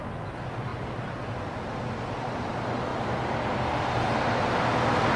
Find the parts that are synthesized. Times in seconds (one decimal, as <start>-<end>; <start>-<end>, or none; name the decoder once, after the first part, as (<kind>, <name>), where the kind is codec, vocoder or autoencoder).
none